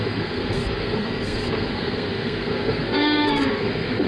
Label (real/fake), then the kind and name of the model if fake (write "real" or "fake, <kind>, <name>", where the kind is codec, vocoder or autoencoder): fake, codec, SNAC